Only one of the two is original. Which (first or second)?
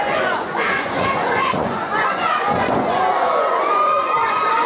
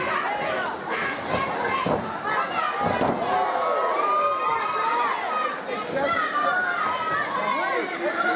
second